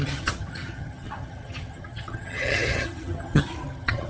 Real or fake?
fake